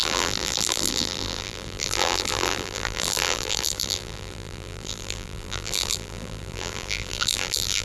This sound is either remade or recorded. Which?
remade